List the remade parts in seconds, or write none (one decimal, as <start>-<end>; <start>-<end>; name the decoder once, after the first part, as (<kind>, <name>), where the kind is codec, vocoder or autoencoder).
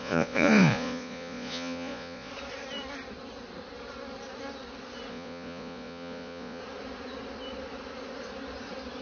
0.0-2.3 (vocoder, Vocos); 5.1-6.6